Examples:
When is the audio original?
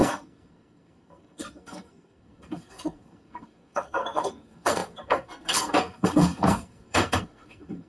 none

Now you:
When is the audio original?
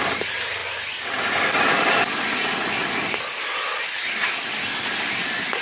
0.0-5.6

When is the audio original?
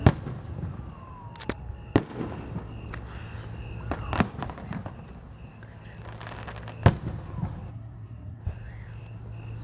0.0-7.7; 8.4-9.6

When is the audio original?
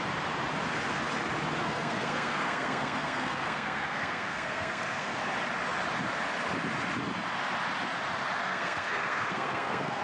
0.0-1.6; 5.2-8.4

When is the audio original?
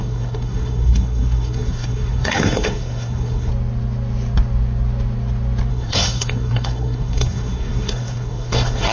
3.5-5.7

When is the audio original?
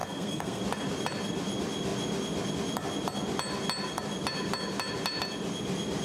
0.6-6.0